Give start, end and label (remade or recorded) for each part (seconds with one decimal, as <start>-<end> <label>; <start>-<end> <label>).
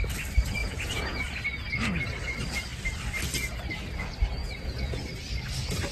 0.0-0.6 recorded; 0.6-1.2 remade; 1.2-4.4 recorded; 4.4-5.0 remade; 5.0-5.9 recorded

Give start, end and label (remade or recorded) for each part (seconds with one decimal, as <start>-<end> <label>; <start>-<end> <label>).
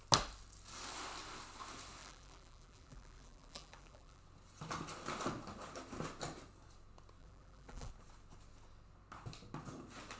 0.0-2.0 recorded; 2.0-4.2 remade; 4.2-7.2 recorded; 7.2-7.9 remade; 7.9-10.2 recorded